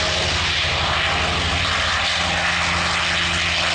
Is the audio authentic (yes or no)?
yes